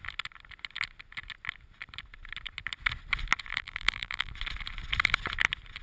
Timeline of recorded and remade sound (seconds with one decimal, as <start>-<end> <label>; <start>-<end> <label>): 0.0-3.5 recorded; 3.5-4.3 remade; 4.3-5.8 recorded